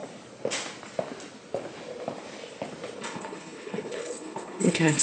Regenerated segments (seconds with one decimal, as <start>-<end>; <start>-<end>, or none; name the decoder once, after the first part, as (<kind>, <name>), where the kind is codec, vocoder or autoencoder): 3.0-5.0 (codec, HILCodec)